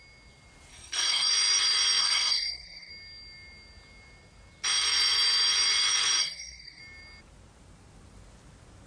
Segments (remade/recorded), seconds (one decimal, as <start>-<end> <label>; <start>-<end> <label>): 0.0-0.7 recorded; 0.7-1.3 remade; 1.3-2.0 recorded; 2.0-2.9 remade; 2.9-6.2 recorded; 6.2-6.8 remade; 6.8-8.9 recorded